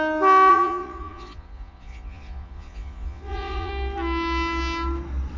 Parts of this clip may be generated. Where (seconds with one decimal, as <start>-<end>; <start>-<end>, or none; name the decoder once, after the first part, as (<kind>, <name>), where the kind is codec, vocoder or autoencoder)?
0.5-3.7 (vocoder, Vocos)